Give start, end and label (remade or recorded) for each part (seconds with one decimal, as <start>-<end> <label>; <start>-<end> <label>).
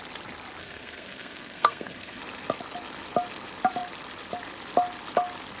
0.0-0.6 recorded; 0.6-2.2 remade; 2.2-5.6 recorded